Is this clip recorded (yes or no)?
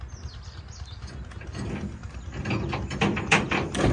yes